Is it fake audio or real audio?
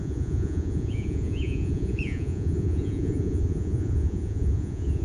fake